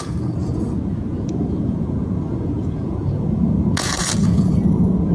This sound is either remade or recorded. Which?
remade